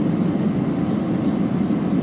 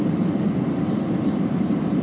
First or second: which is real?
first